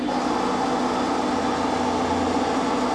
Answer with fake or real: real